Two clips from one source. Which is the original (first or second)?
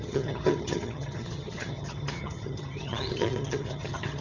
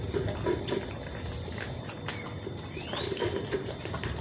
second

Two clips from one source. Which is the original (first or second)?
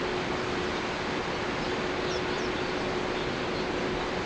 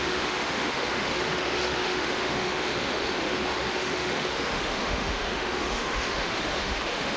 first